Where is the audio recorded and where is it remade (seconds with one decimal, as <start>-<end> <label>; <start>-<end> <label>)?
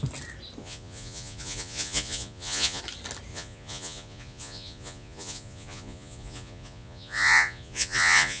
0.0-0.6 recorded; 0.6-2.8 remade; 2.8-3.3 recorded; 3.3-8.4 remade